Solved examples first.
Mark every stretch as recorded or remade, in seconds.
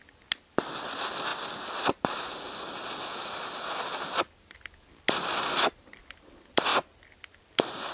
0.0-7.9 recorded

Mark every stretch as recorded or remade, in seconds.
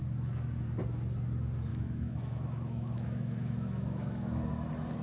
0.0-1.7 recorded; 1.7-4.5 remade; 4.5-5.0 recorded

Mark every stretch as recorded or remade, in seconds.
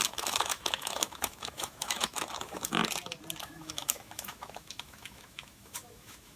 0.0-2.8 remade; 2.8-3.4 recorded; 3.4-6.4 remade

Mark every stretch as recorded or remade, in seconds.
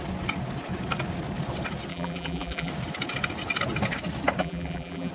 0.0-1.9 recorded; 1.9-2.7 remade; 2.7-4.4 recorded; 4.4-5.1 remade